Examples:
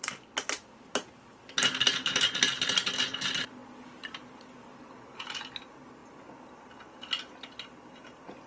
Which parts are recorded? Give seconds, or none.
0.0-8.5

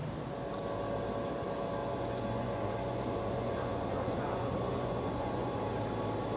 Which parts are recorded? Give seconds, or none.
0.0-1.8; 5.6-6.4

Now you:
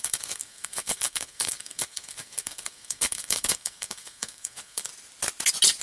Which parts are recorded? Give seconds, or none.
4.9-5.8

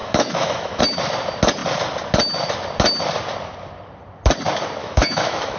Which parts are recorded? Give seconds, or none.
0.8-4.8

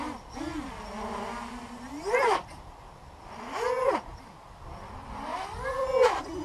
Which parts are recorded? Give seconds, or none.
0.0-6.4

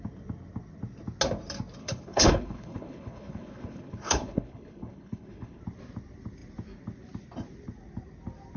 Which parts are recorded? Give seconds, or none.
0.0-1.8; 5.6-8.6